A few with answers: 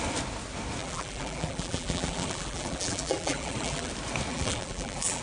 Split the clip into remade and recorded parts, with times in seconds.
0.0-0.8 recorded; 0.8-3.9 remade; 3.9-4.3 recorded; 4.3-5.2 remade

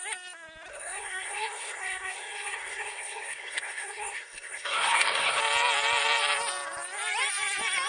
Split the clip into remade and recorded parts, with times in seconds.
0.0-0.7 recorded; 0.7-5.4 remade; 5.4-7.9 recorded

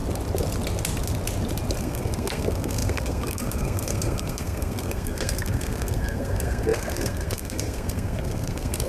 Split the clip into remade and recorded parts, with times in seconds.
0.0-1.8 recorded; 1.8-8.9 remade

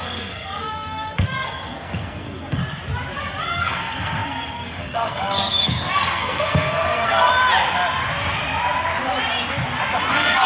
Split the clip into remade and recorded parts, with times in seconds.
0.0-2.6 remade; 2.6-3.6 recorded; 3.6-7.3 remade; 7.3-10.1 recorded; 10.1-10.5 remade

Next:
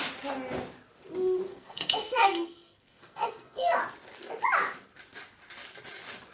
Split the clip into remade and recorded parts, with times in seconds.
0.0-1.5 recorded; 1.5-3.8 remade; 3.8-6.3 recorded

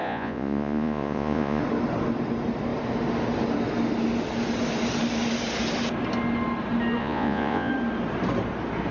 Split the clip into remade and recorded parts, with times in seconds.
0.0-1.6 remade; 1.6-7.0 recorded; 7.0-7.7 remade; 7.7-8.9 recorded